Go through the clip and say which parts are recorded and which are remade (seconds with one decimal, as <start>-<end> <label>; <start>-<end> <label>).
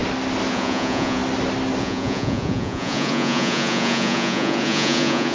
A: 0.0-0.5 recorded; 0.5-1.2 remade; 1.2-1.8 recorded; 1.8-5.3 remade